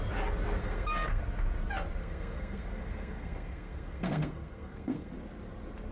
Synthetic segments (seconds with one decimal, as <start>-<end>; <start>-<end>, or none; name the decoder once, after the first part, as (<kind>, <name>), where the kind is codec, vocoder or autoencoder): 0.6-1.2 (codec, SNAC); 2.0-5.1